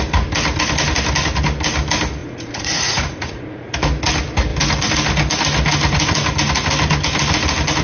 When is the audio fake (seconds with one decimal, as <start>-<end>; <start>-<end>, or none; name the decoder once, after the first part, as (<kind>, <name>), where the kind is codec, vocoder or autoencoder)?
2.2-3.7 (vocoder, Vocos)